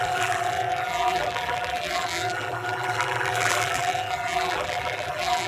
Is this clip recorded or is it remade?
remade